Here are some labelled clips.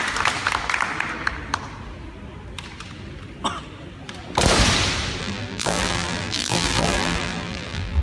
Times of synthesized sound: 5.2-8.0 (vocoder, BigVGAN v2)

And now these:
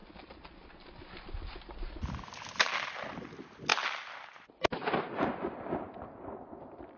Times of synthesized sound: none

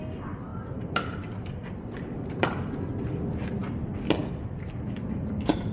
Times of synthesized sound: 0.5-2.7 (vocoder, BigVGAN v2); 3.6-4.2

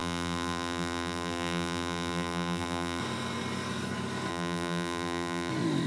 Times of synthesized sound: 0.0-3.0 (vocoder, BigVGAN v2); 4.3-5.5

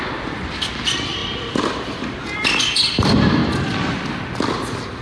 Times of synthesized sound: 0.0-3.4 (vocoder, BigVGAN v2); 3.9-5.0